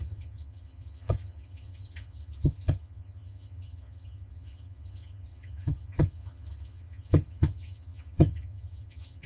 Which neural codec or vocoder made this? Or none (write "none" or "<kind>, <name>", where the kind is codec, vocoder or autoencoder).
vocoder, HiFi-GAN